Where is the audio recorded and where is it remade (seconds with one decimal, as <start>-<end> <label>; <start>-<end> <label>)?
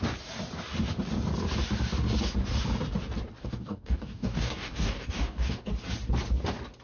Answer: 0.0-3.4 recorded; 3.4-5.7 remade; 5.7-6.8 recorded